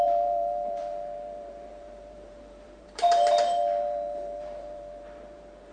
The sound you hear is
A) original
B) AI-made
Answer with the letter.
B